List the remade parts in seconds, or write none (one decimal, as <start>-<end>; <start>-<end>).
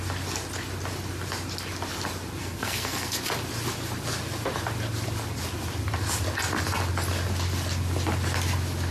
2.4-3.2